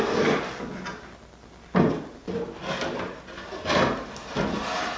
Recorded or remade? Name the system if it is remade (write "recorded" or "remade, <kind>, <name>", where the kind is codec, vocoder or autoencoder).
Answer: recorded